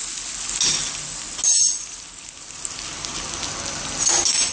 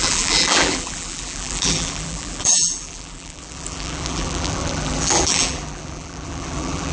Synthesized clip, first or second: second